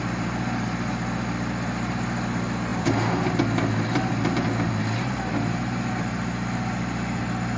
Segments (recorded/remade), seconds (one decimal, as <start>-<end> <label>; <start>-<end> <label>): 0.0-7.6 recorded

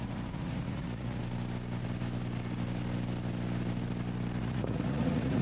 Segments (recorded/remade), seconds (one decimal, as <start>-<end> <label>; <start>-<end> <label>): 0.0-1.2 remade; 1.2-4.4 recorded; 4.4-5.4 remade

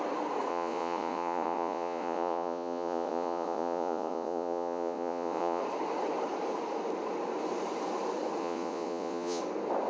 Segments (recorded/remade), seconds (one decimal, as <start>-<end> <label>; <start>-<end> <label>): 0.0-0.5 recorded; 0.5-5.6 remade; 5.6-8.4 recorded; 8.4-9.4 remade; 9.4-9.9 recorded

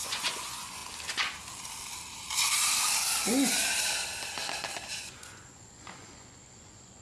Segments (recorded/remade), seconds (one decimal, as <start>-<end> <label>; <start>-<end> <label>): 0.0-0.8 remade; 0.8-5.0 recorded; 5.0-7.0 remade

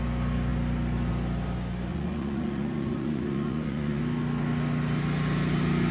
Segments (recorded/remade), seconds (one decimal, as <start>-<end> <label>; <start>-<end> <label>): 0.0-1.9 recorded; 1.9-4.0 remade; 4.0-5.9 recorded

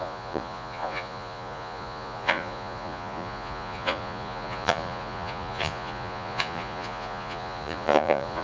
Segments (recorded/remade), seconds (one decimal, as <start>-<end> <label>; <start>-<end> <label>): 0.0-8.4 remade